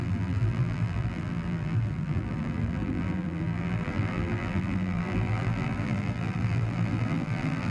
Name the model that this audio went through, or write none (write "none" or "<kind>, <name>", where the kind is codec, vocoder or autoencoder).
vocoder, BigVGAN v2